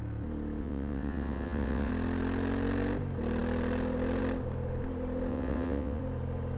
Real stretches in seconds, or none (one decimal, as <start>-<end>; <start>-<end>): 0.0-0.6; 1.9-5.3; 6.0-6.6